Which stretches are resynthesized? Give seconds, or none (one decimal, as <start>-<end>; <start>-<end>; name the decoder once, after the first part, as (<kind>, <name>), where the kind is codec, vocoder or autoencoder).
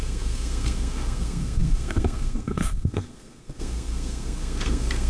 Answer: 0.0-5.1 (codec, SNAC)